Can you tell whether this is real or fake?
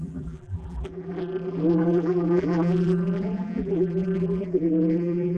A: fake